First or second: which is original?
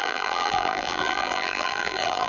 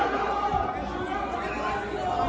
second